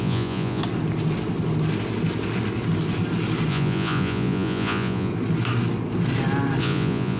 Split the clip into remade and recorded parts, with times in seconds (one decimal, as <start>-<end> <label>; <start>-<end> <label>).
0.0-0.6 remade; 0.6-3.5 recorded; 3.5-5.1 remade; 5.1-6.6 recorded; 6.6-7.2 remade